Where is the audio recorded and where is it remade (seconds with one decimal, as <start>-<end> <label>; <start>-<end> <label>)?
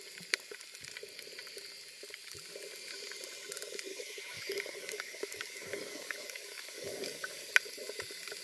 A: 0.0-3.9 recorded; 3.9-7.5 remade; 7.5-8.4 recorded